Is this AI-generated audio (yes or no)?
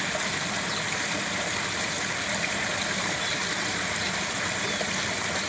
yes